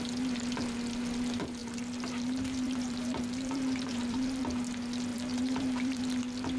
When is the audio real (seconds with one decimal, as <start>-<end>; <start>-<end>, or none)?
0.0-1.6; 4.4-5.1; 6.0-6.6